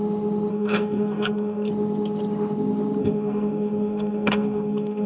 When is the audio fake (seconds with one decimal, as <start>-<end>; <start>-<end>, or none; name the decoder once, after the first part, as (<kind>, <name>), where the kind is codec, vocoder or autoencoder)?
0.5-1.7 (codec, SNAC); 3.0-5.1

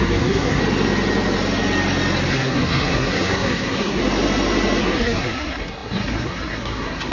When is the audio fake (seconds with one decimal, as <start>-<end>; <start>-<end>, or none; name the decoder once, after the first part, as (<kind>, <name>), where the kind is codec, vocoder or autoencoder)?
0.0-0.6 (codec, SNAC); 2.3-4.0; 4.8-7.1

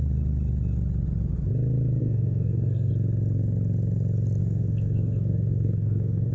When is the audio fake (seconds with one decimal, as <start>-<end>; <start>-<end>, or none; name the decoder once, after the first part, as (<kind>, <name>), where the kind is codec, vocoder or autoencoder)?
2.0-2.9 (codec, SNAC); 4.4-6.3

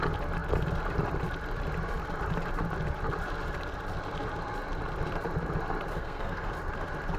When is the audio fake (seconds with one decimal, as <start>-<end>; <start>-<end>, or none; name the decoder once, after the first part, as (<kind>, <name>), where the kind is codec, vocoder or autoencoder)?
5.9-6.5 (codec, SNAC)

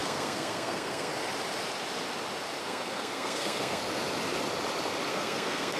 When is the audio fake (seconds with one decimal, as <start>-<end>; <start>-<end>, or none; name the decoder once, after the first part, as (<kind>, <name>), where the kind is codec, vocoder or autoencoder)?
0.0-1.1 (codec, SNAC); 2.6-3.8; 5.1-5.8

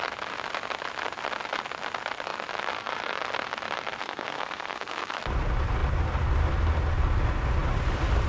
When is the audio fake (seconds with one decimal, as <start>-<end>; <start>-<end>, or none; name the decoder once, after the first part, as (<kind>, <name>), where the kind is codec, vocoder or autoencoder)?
4.0-5.2 (codec, SNAC)